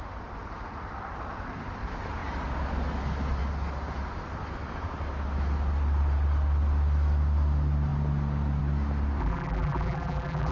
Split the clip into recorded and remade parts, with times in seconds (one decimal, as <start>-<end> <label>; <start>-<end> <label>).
0.0-9.2 recorded; 9.2-10.5 remade